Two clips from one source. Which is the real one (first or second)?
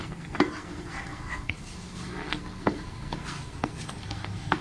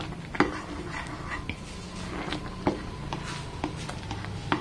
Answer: second